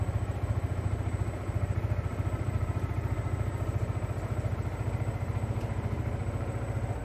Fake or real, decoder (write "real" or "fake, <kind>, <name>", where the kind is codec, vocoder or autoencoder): fake, vocoder, BigVGAN v2